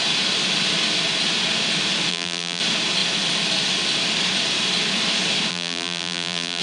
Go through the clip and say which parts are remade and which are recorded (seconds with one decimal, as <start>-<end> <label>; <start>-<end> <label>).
0.0-2.1 recorded; 2.1-2.6 remade; 2.6-5.5 recorded; 5.5-6.6 remade